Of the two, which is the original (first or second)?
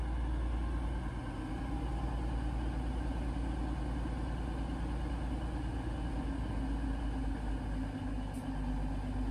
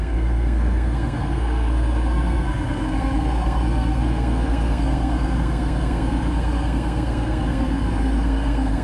first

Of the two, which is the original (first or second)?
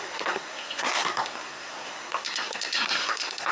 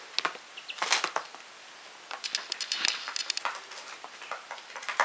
second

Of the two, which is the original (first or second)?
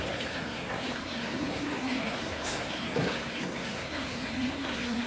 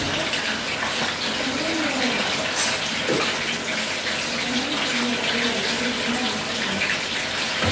second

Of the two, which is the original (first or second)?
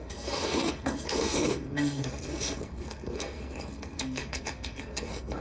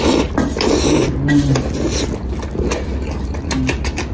second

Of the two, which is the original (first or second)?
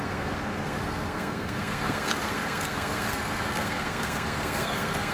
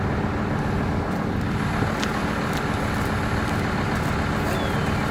second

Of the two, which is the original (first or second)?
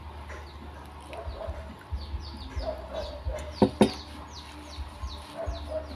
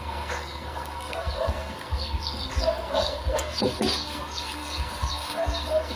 first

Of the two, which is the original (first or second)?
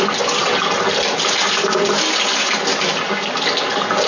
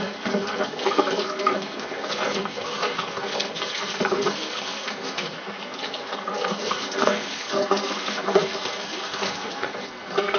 first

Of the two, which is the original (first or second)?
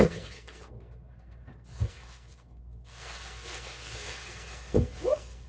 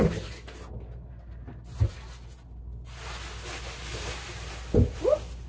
second